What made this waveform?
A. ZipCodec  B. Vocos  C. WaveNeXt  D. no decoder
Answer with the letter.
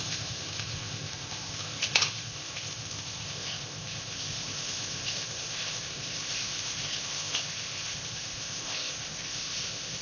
A